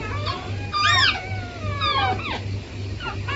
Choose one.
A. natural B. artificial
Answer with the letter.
A